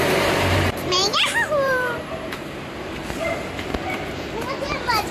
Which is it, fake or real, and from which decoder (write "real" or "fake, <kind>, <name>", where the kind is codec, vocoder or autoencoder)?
fake, vocoder, BigVGAN v2